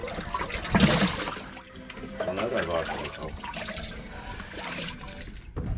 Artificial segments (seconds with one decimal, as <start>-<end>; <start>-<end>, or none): 2.9-4.9